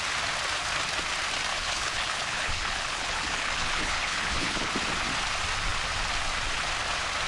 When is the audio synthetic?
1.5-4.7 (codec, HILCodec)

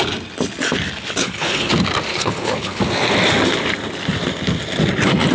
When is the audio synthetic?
1.2-1.7 (codec, HILCodec); 2.1-2.8

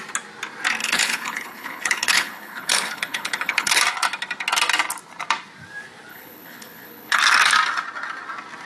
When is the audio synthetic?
0.8-3.8 (codec, HILCodec); 6.1-7.2